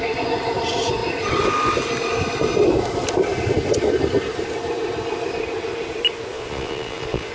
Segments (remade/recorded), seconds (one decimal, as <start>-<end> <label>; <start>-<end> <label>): 0.0-6.3 recorded; 6.3-7.3 remade